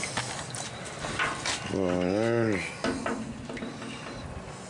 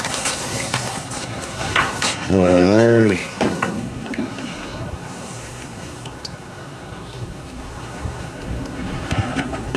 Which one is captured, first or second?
first